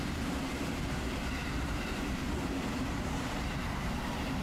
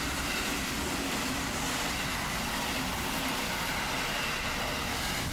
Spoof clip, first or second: first